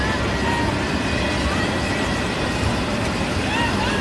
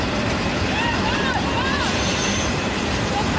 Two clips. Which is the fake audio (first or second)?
second